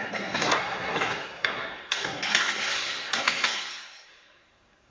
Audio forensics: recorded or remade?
remade